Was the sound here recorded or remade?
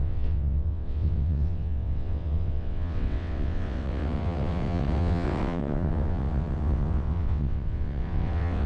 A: remade